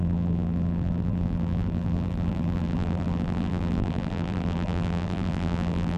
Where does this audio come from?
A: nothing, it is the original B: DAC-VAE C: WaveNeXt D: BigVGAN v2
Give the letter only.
D